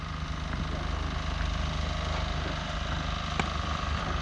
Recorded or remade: recorded